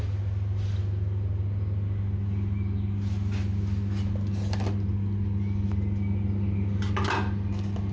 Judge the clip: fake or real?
real